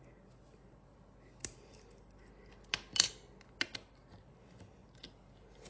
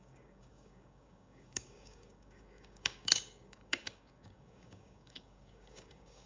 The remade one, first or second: second